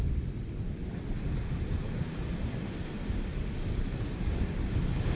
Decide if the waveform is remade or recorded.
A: recorded